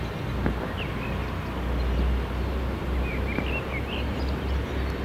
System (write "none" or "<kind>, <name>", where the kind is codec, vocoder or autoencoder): none